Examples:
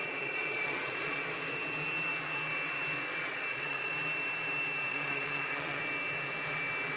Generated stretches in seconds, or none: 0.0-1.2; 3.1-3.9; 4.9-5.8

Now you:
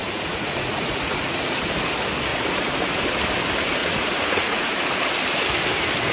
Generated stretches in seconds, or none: 0.0-1.6; 2.3-2.8; 3.8-4.7

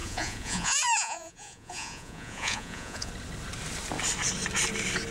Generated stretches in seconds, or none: 0.0-3.1

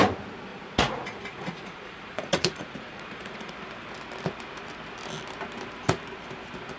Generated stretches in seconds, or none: 0.5-3.5

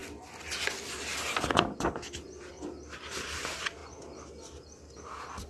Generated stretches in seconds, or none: none

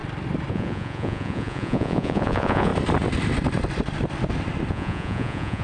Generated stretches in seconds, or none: 0.5-2.7; 4.7-5.6